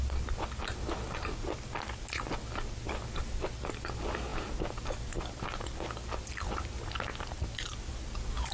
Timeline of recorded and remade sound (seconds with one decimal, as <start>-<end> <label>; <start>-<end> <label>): 0.0-8.5 recorded